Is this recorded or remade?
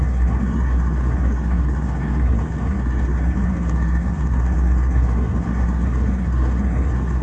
remade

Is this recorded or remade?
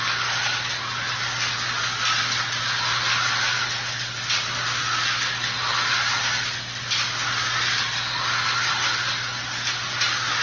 recorded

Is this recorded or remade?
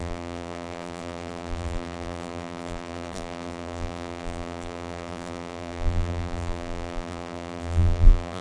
remade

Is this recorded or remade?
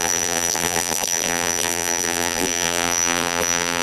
remade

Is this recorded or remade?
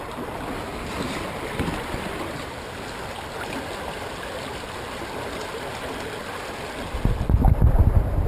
recorded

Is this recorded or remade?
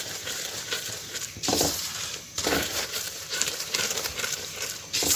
remade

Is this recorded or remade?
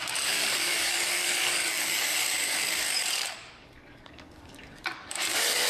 remade